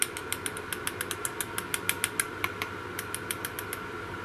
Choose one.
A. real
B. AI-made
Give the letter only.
A